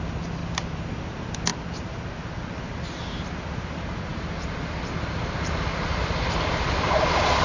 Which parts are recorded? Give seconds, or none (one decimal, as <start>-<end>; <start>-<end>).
0.0-7.4